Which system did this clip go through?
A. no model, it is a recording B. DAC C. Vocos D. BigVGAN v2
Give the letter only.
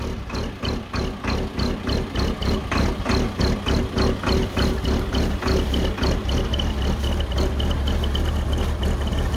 A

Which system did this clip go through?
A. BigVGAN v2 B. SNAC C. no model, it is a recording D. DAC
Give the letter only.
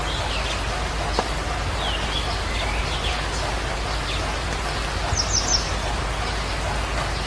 C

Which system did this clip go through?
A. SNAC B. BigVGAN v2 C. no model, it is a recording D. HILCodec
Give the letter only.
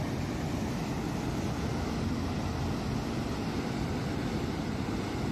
C